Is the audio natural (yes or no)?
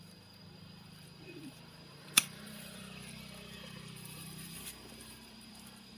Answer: no